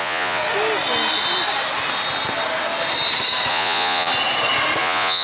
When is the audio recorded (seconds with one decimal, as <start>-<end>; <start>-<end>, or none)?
0.4-3.5; 4.1-4.8